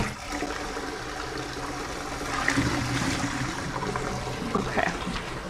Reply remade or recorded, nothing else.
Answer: recorded